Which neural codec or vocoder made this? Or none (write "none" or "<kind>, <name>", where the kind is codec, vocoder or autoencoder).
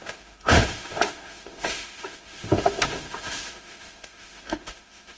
autoencoder, DAC-VAE